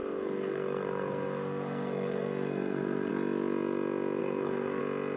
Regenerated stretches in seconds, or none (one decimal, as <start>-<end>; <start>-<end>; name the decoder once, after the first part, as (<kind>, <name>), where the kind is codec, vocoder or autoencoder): 0.0-3.1 (codec, SNAC); 4.2-4.8